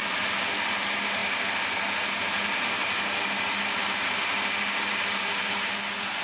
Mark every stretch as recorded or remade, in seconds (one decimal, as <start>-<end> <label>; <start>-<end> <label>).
0.0-6.2 recorded